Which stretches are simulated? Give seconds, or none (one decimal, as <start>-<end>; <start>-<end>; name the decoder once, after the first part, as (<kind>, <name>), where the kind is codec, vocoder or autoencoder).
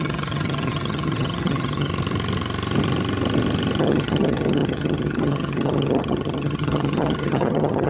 0.0-1.9 (vocoder, HiFi-GAN); 3.8-7.9